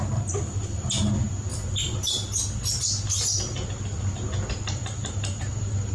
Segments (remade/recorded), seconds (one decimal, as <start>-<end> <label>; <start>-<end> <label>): 0.0-5.9 recorded